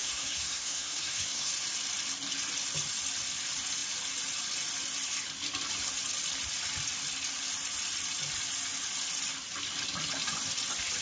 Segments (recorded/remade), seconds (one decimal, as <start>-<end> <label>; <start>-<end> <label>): 0.0-1.5 remade; 1.5-11.0 recorded